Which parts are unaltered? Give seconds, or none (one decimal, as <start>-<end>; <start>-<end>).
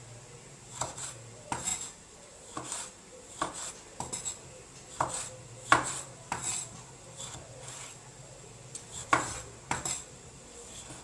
0.0-11.0